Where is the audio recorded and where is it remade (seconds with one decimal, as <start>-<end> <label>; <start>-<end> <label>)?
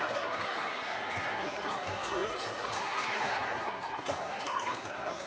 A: 0.0-5.3 remade